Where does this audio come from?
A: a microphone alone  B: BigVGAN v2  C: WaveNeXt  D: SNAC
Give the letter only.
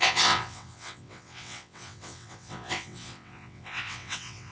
C